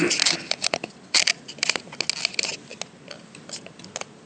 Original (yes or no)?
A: yes